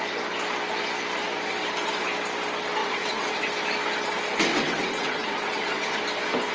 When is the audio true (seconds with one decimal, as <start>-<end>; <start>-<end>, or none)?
0.0-2.8; 3.5-4.5; 6.0-6.5